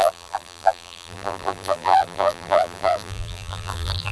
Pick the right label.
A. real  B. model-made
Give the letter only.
B